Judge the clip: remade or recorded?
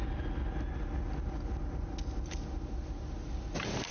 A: recorded